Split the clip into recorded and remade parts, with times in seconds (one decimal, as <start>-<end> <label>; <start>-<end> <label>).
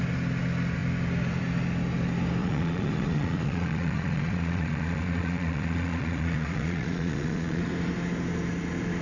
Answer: 0.0-2.4 recorded; 2.4-7.6 remade; 7.6-9.0 recorded